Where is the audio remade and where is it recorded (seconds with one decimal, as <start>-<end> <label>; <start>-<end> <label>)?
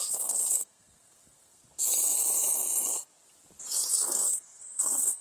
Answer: 0.0-1.6 remade; 1.6-3.9 recorded; 3.9-5.2 remade